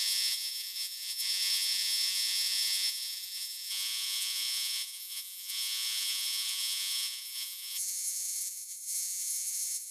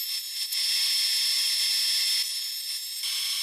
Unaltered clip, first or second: second